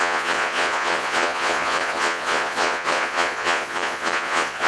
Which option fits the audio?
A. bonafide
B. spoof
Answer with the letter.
B